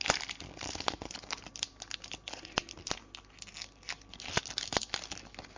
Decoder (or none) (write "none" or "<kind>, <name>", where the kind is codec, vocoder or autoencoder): none